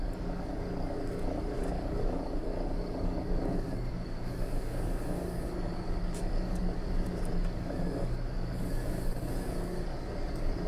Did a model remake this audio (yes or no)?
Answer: yes